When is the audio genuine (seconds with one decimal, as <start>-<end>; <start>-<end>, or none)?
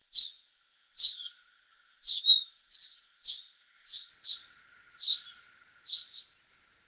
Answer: 4.1-6.9